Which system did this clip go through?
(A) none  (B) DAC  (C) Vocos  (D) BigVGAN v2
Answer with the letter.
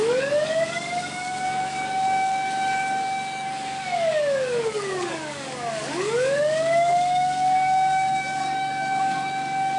B